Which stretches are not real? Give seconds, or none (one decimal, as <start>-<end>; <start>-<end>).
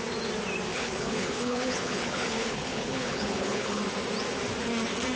0.7-3.8